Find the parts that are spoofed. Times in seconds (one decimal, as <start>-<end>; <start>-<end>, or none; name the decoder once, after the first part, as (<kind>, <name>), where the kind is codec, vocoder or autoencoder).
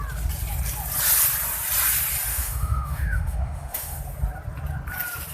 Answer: 2.3-4.0 (autoencoder, DAC-VAE)